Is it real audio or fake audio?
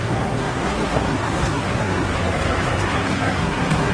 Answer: fake